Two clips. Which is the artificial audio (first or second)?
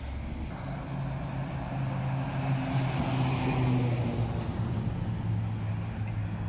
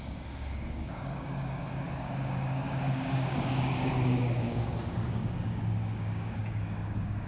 second